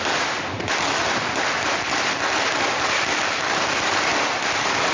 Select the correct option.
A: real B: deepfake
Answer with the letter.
A